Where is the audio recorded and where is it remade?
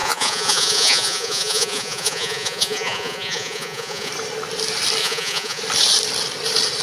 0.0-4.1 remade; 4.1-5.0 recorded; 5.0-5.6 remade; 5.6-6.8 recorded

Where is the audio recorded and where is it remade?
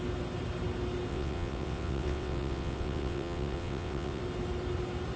0.0-1.1 recorded; 1.1-4.2 remade; 4.2-5.2 recorded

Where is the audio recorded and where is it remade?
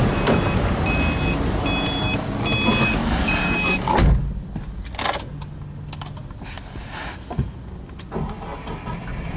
0.0-3.0 recorded; 3.0-4.1 remade; 4.1-9.4 recorded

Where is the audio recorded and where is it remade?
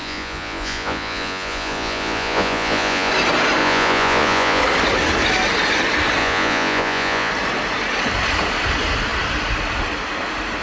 0.0-3.1 remade; 3.1-3.6 recorded; 3.6-4.6 remade; 4.6-6.2 recorded; 6.2-7.3 remade; 7.3-10.6 recorded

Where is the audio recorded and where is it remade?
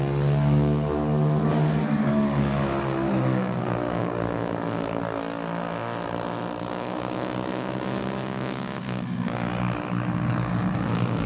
0.0-5.0 remade; 5.0-6.6 recorded; 6.6-11.3 remade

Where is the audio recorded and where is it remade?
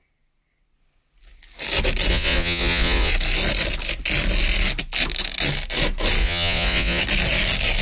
0.0-2.1 recorded; 2.1-3.1 remade; 3.1-6.2 recorded; 6.2-7.0 remade; 7.0-7.8 recorded